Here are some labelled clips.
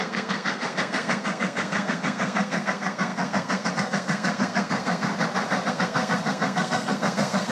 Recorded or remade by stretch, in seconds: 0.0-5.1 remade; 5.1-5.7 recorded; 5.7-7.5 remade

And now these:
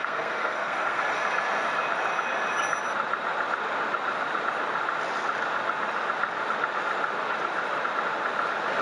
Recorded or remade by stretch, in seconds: 0.0-1.0 remade; 1.0-8.8 recorded

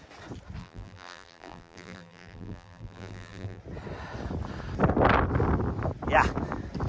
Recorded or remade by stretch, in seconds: 0.0-0.6 recorded; 0.6-3.6 remade; 3.6-6.9 recorded